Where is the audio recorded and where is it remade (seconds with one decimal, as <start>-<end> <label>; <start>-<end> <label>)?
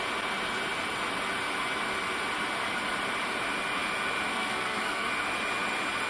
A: 0.0-4.3 recorded; 4.3-5.1 remade; 5.1-6.1 recorded